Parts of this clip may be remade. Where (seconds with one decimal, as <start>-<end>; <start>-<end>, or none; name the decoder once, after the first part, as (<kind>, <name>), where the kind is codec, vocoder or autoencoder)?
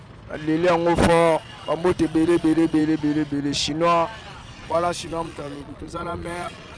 1.0-2.8 (vocoder, Vocos); 4.3-6.8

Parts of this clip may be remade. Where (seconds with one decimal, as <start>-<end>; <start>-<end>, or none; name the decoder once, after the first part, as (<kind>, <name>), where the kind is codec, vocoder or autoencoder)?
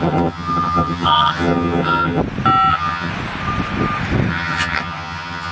0.0-2.2 (vocoder, HiFi-GAN); 2.7-3.1; 4.3-5.5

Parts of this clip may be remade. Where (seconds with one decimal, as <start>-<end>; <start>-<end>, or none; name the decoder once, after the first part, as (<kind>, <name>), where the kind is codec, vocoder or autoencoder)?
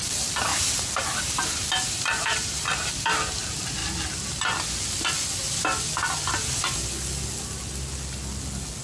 0.5-2.9 (vocoder, BigVGAN v2)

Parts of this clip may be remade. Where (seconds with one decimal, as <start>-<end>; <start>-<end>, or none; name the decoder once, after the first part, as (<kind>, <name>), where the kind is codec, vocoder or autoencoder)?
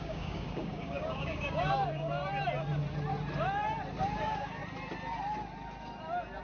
0.0-2.2 (codec, DAC); 4.0-4.6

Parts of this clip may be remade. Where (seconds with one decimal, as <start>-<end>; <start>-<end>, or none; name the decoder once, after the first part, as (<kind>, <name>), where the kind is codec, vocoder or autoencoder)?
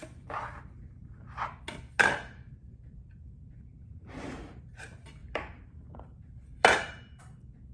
2.6-4.6 (vocoder, BigVGAN v2); 5.2-7.2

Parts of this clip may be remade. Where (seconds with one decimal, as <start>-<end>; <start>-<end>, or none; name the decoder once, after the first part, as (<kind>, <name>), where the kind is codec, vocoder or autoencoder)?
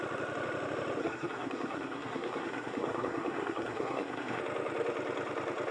1.0-4.4 (codec, SNAC)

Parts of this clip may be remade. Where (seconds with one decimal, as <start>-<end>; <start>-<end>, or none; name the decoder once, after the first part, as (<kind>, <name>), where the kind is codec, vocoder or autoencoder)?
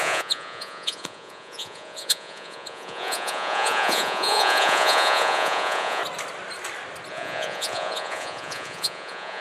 0.0-6.0 (vocoder, Vocos); 7.1-9.4